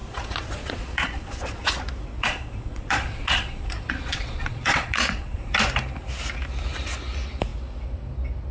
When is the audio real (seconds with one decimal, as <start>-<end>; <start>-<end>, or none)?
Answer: 1.8-2.2; 5.5-8.5